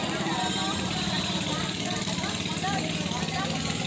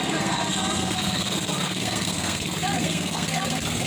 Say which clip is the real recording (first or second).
first